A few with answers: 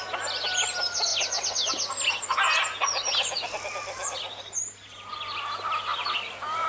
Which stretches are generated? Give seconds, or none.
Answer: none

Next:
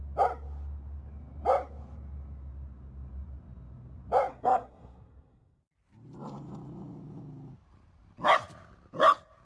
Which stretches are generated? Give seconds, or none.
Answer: 4.3-5.6 (codec, SNAC)

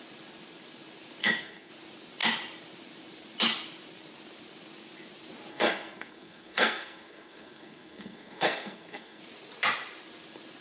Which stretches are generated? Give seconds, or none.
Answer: 1.2-1.7 (codec, SNAC); 5.5-9.2

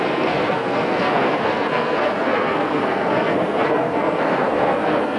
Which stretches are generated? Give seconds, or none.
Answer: 0.0-5.2 (codec, SNAC)

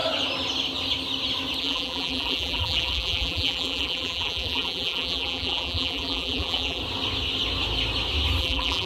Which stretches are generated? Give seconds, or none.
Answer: 1.6-6.8 (vocoder, BigVGAN v2); 8.4-8.9

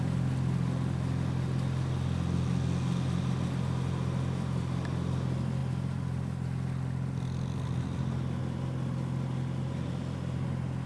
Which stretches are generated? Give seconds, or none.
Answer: none